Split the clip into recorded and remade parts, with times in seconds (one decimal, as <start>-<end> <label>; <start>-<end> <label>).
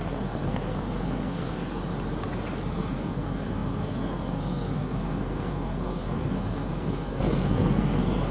0.0-1.8 remade; 1.8-2.7 recorded; 2.7-8.3 remade